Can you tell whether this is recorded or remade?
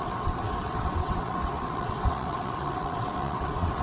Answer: remade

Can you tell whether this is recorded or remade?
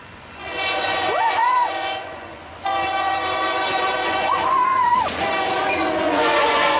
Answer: remade